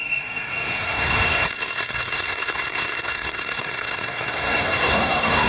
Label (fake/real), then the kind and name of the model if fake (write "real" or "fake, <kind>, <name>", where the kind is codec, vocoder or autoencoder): fake, codec, SNAC